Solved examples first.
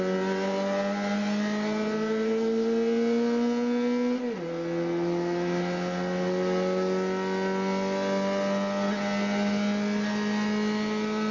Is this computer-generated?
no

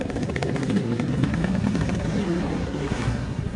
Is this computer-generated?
yes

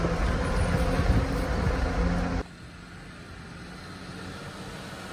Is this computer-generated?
no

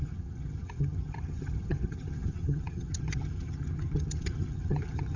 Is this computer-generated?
yes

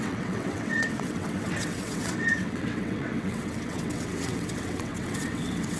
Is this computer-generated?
yes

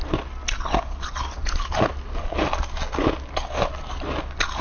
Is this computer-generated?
no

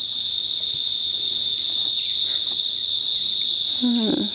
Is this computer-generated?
no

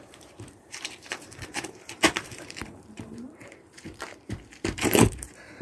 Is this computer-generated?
yes